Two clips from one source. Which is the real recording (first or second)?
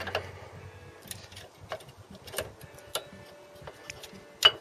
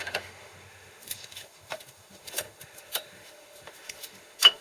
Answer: first